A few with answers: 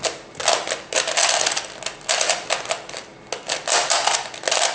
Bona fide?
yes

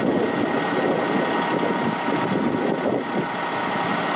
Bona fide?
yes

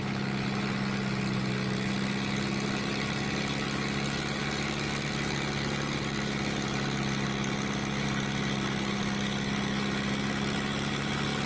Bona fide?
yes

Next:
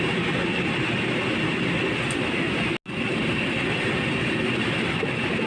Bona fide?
yes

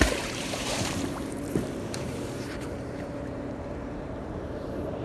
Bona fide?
no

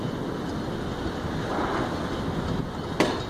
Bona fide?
yes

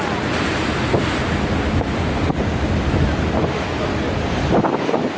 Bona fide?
yes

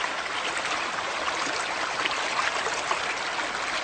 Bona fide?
yes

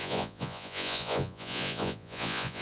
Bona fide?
no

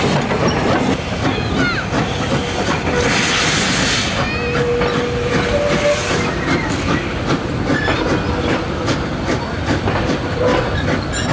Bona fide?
yes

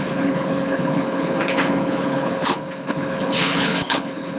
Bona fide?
no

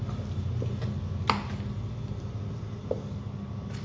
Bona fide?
yes